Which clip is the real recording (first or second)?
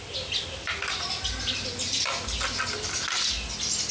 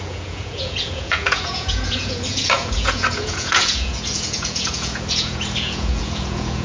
first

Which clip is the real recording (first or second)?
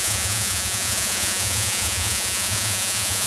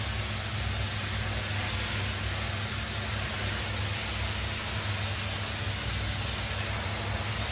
second